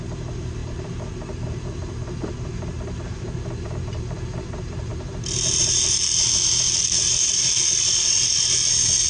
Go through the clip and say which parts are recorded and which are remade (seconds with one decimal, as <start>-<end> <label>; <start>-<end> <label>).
0.0-7.6 remade; 7.6-8.1 recorded; 8.1-9.1 remade